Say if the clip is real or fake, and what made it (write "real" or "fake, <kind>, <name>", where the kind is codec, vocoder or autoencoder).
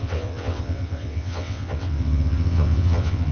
fake, vocoder, WaveNeXt